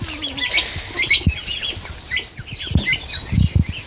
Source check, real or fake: real